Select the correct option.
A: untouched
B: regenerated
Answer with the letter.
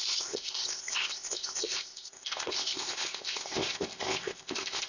B